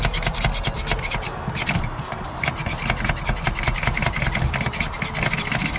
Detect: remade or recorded recorded